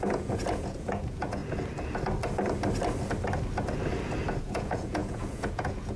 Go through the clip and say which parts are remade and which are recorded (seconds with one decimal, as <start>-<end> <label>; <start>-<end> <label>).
0.0-1.4 remade; 1.4-4.4 recorded; 4.4-6.0 remade